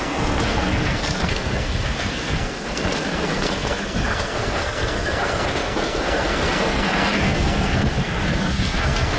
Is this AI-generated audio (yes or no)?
yes